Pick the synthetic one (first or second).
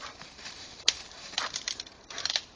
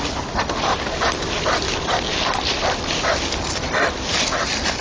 first